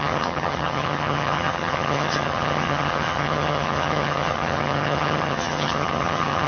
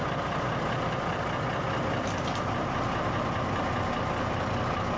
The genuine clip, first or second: second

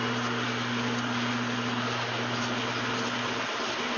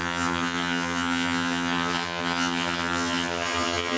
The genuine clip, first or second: first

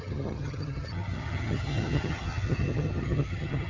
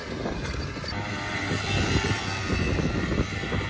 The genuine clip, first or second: second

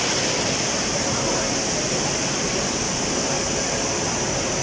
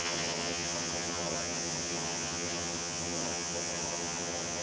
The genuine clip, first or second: first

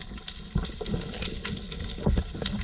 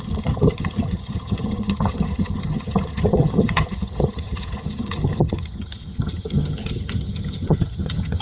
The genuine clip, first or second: first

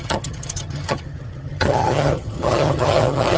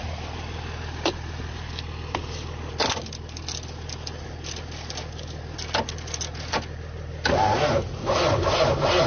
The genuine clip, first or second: second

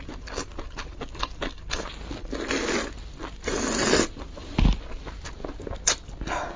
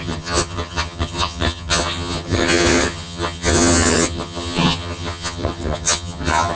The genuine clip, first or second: first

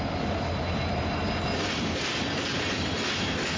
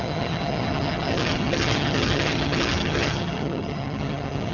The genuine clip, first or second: first